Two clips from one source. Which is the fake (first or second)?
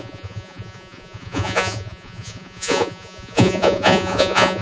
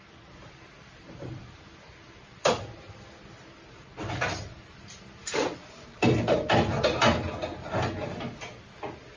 first